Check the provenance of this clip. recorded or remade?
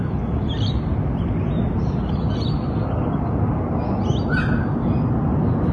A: recorded